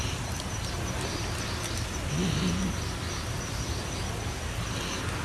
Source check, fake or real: real